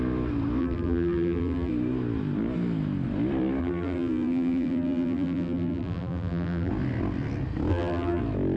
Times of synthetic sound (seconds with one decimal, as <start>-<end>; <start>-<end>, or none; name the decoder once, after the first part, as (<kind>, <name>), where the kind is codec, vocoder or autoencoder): 0.6-1.7 (vocoder, BigVGAN v2); 3.6-6.7; 7.7-8.2